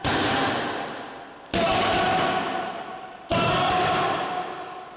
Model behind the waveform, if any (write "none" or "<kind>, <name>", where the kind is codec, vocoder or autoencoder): none